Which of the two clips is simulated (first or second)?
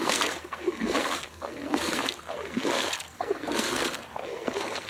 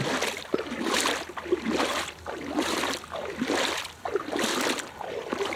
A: first